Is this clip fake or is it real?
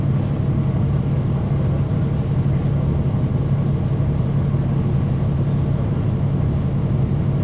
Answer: real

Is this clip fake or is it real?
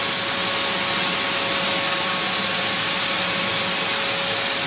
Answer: real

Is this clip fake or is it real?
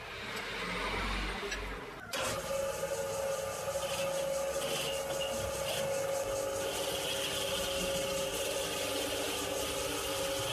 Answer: real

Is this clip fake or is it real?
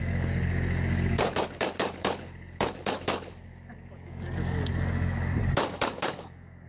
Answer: fake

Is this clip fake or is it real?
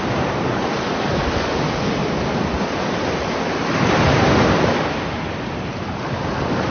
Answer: real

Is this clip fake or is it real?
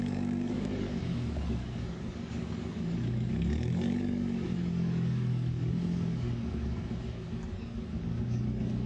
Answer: fake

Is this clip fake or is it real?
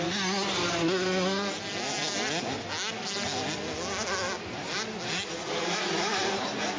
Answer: real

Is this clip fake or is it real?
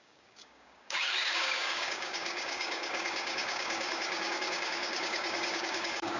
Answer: fake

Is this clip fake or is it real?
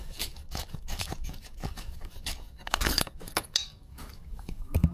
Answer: fake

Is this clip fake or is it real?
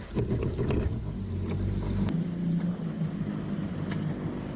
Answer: real